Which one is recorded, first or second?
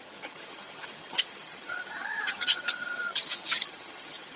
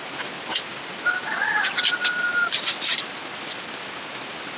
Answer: second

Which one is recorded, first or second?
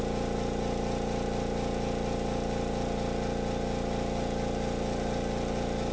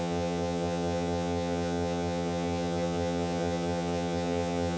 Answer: first